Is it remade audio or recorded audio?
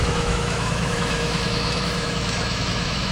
remade